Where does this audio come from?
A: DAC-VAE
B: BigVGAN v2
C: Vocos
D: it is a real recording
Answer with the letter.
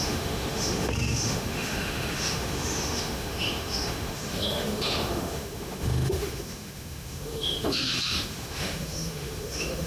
A